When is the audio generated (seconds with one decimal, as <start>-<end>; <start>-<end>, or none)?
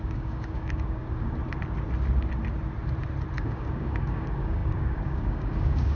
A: 0.0-1.4; 3.4-6.0